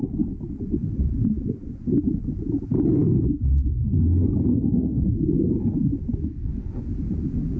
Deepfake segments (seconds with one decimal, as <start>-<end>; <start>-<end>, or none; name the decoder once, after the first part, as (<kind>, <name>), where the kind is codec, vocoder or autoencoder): 4.5-5.0 (autoencoder, DAC-VAE)